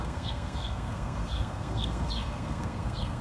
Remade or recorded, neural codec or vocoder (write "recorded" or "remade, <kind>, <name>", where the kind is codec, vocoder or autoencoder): remade, codec, SNAC